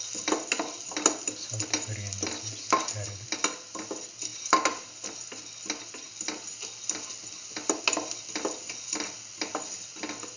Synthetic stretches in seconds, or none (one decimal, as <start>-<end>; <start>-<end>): none